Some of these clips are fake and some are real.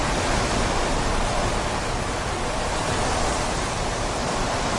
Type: fake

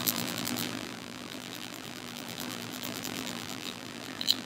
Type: fake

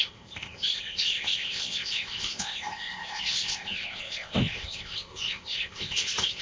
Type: fake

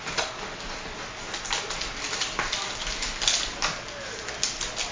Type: real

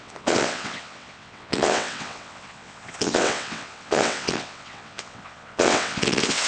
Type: fake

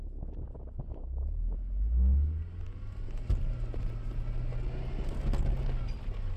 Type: real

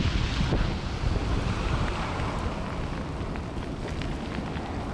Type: real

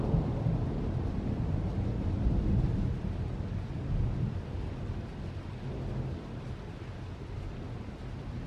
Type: real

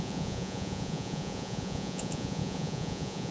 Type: fake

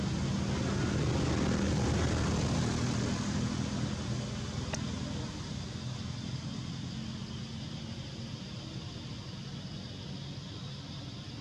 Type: real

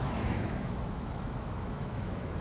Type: fake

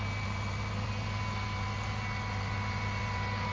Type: real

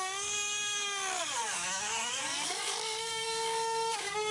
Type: fake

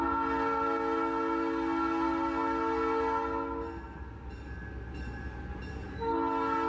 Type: real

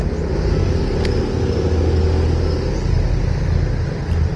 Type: real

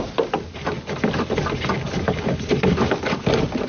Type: real